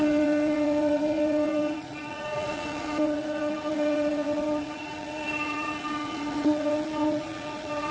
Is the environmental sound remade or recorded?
remade